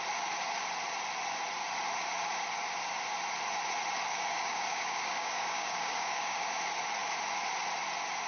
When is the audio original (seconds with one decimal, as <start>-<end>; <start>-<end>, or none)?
0.0-4.1; 6.5-8.3